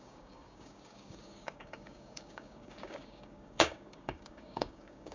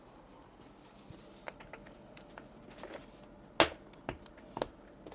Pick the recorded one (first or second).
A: second